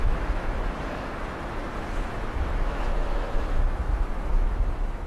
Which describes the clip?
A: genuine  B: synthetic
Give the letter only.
B